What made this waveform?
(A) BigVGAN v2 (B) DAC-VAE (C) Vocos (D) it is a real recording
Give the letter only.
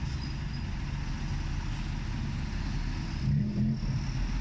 D